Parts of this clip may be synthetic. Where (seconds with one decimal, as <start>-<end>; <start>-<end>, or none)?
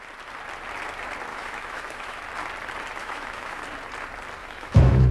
1.3-2.2; 3.0-3.6; 4.4-5.1